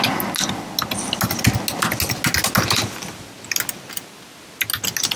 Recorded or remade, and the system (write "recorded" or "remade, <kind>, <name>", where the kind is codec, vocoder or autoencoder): recorded